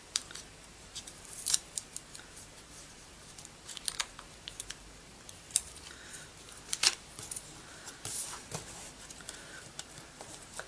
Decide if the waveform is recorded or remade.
remade